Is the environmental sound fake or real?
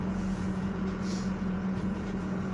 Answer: fake